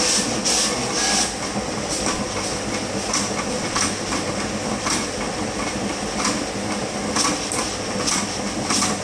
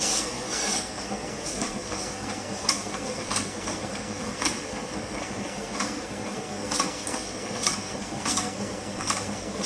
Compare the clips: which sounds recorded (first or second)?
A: first